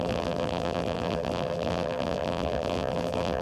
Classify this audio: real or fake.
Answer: fake